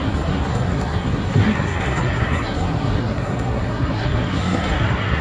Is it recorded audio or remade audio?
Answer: remade